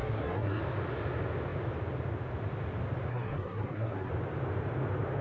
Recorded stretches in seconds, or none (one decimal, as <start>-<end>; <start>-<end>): 0.6-3.1; 4.1-5.2